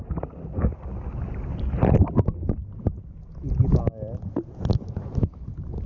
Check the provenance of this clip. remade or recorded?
recorded